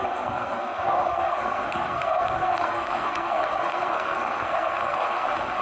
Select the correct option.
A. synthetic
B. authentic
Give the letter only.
A